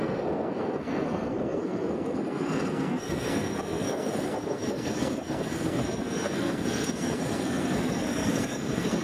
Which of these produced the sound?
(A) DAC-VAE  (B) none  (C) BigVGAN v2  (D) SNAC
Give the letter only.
D